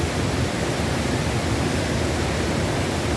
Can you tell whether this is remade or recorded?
recorded